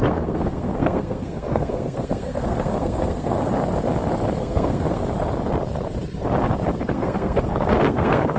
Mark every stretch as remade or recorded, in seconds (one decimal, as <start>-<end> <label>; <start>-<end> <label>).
0.0-3.4 remade; 3.4-4.4 recorded; 4.4-5.0 remade; 5.0-6.8 recorded; 6.8-8.4 remade